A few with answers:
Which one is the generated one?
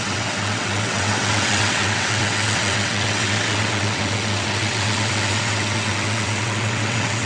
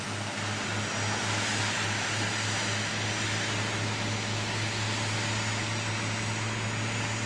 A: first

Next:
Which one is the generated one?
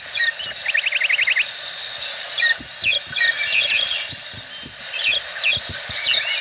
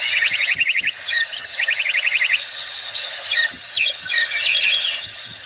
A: second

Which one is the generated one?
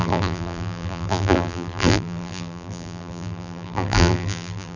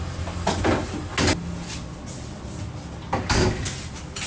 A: first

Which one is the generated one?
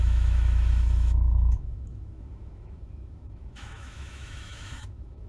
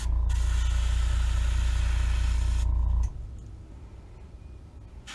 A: first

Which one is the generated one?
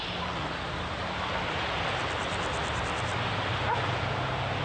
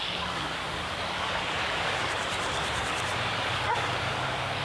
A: second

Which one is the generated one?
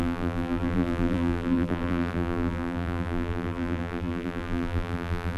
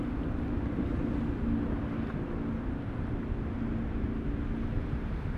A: first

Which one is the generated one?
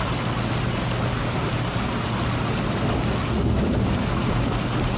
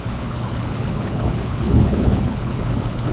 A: second